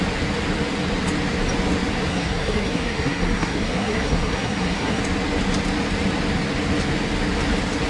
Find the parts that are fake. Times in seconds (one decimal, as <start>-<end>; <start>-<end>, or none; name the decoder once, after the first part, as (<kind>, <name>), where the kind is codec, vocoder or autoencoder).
2.1-5.0 (codec, SNAC)